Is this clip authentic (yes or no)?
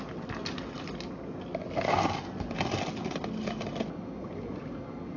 yes